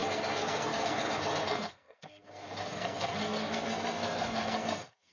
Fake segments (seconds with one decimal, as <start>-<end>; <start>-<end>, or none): 0.0-5.1